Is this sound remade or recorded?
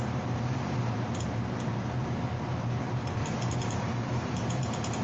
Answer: remade